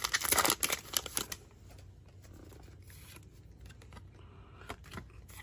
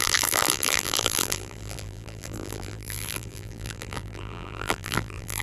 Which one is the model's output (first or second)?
second